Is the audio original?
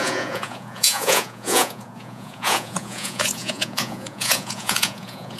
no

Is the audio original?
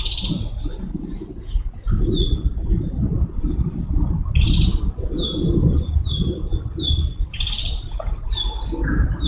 yes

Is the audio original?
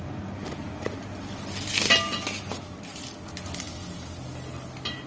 yes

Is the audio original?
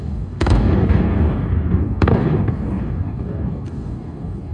no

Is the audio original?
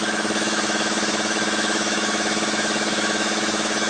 no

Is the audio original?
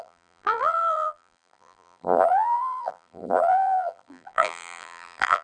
no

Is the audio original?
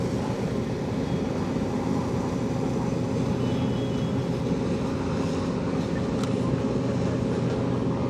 yes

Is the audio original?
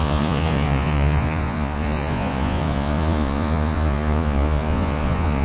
no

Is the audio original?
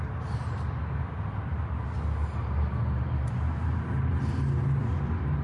yes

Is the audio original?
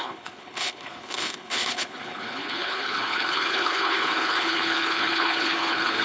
no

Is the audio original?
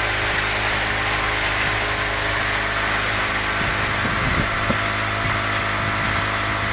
yes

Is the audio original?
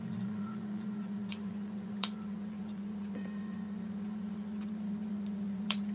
no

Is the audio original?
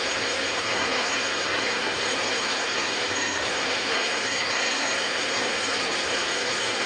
no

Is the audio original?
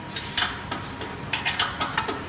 yes